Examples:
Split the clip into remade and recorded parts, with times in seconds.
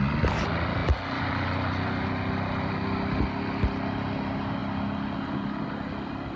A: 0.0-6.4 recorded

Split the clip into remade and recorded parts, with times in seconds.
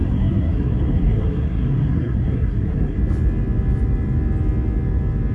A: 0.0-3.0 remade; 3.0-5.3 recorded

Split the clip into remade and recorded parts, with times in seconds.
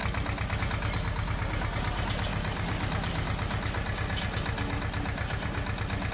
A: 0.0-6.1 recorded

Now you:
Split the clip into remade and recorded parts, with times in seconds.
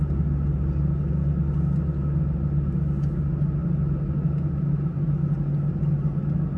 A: 0.0-6.6 recorded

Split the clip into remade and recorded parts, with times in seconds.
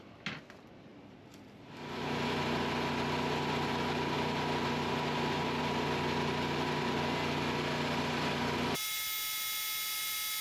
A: 0.0-10.4 recorded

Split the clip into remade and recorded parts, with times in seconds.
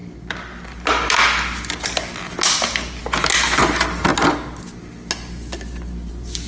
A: 0.0-6.5 recorded